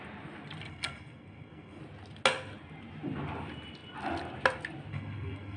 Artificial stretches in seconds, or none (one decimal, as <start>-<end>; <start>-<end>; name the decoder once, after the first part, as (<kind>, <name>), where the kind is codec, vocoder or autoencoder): 0.7-1.8 (codec, SNAC); 4.9-5.6